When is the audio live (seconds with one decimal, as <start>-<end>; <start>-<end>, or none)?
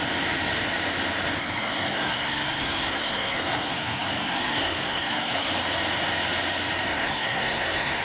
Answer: 0.0-1.4; 5.5-6.9